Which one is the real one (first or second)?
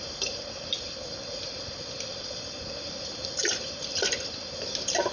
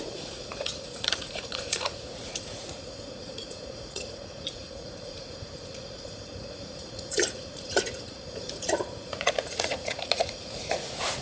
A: first